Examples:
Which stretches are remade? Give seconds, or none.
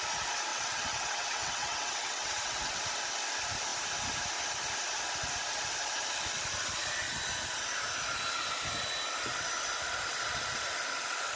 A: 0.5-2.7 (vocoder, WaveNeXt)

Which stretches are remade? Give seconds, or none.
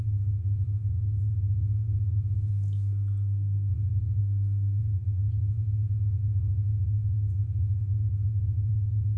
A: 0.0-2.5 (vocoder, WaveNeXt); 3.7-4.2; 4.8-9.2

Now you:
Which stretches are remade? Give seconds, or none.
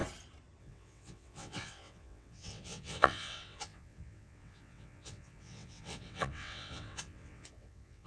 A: 0.6-8.1 (vocoder, WaveNeXt)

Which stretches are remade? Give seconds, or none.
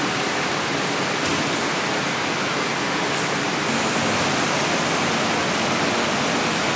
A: none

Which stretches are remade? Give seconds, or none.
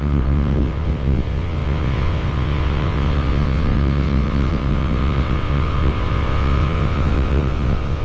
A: 0.0-8.0 (vocoder, WaveNeXt)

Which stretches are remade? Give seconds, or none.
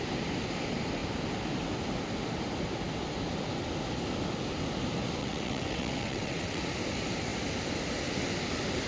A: 5.2-6.6 (vocoder, WaveNeXt)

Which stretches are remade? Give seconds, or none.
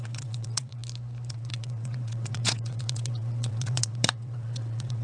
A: 0.0-0.8 (vocoder, WaveNeXt); 1.3-5.0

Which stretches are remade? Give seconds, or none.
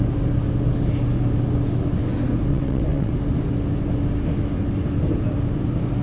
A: 2.5-3.1 (vocoder, WaveNeXt)